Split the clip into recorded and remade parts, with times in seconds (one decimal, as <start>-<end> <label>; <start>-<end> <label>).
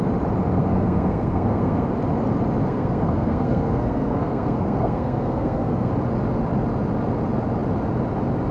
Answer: 0.0-0.6 recorded; 0.6-1.9 remade; 1.9-2.6 recorded; 2.6-5.9 remade; 5.9-8.5 recorded